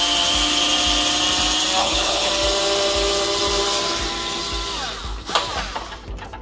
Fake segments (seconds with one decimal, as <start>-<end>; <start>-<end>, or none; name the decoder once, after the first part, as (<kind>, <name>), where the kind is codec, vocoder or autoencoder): 1.8-2.3 (codec, HILCodec)